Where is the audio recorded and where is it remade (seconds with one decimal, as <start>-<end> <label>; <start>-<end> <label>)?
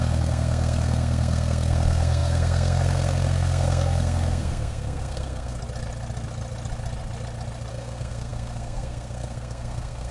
0.0-5.6 remade; 5.6-7.7 recorded; 7.7-10.1 remade